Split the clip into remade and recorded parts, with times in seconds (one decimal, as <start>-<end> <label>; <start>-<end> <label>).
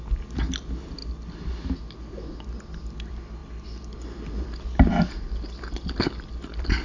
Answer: 0.0-6.8 recorded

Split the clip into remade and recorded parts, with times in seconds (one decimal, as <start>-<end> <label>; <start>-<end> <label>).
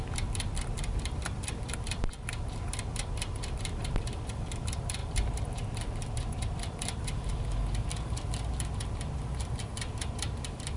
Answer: 0.0-10.8 remade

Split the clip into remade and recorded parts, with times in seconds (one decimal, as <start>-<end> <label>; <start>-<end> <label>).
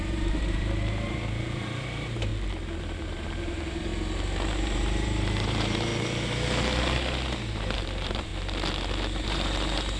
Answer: 0.0-2.3 remade; 2.3-2.8 recorded; 2.8-3.9 remade; 3.9-4.5 recorded; 4.5-5.9 remade; 5.9-7.5 recorded; 7.5-8.3 remade; 8.3-9.2 recorded; 9.2-10.0 remade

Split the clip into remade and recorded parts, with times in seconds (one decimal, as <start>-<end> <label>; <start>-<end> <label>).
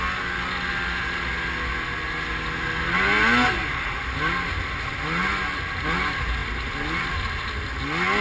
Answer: 0.0-8.2 recorded